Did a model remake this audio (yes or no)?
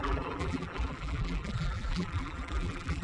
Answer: yes